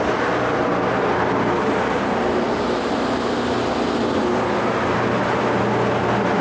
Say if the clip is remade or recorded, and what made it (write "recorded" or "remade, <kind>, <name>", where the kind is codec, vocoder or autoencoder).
recorded